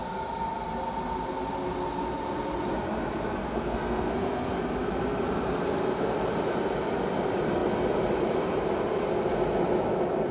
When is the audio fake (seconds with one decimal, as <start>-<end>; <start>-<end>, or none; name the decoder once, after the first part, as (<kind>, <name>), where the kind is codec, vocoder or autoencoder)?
3.4-4.6 (codec, SNAC)